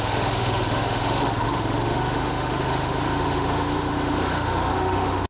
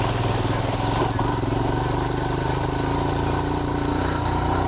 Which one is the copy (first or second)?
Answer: first